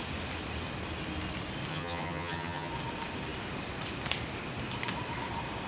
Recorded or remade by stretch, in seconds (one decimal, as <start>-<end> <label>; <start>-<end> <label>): 0.0-1.7 recorded; 1.7-2.7 remade; 2.7-5.7 recorded